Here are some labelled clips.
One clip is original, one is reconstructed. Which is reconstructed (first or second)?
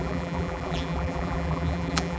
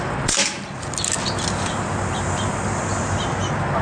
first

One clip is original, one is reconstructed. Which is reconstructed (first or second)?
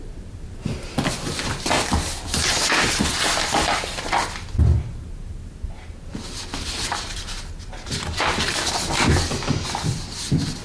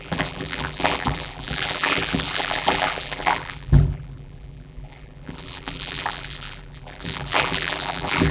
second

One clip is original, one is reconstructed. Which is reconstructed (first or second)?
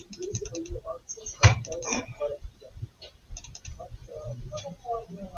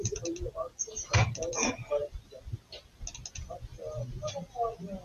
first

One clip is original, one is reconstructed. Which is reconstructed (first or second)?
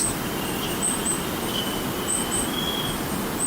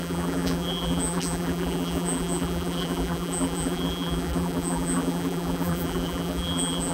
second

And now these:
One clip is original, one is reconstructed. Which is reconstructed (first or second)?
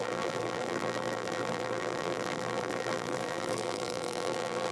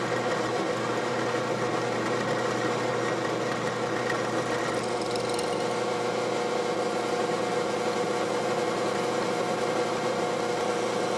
first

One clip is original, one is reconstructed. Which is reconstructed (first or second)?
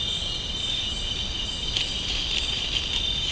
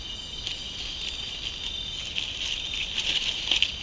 first